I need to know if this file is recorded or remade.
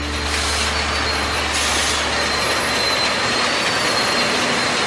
recorded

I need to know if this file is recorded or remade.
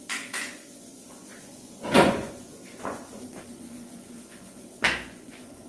remade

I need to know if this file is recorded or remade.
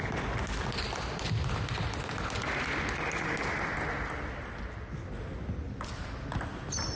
recorded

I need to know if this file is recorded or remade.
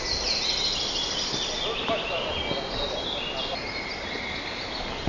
recorded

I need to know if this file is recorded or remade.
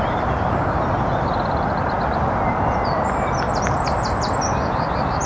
recorded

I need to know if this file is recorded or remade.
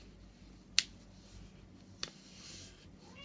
recorded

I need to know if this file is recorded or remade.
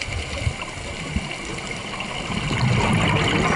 recorded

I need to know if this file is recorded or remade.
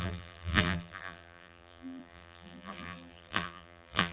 remade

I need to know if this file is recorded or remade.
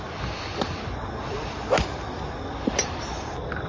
recorded